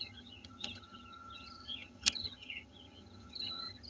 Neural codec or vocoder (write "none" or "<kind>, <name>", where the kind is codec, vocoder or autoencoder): vocoder, HiFi-GAN